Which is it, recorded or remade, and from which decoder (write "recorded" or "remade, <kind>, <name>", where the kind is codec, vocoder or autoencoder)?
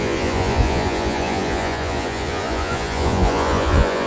remade, vocoder, Vocos